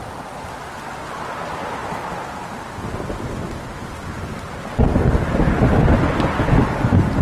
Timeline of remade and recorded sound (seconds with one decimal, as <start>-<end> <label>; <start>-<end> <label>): 0.0-7.2 recorded